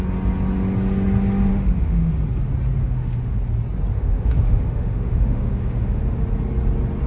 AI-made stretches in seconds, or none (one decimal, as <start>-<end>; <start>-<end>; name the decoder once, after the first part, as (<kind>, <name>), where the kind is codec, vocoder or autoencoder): 1.5-2.1 (autoencoder, DAC-VAE); 2.8-3.4; 3.9-6.0